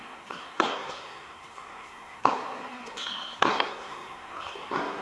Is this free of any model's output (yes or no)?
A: no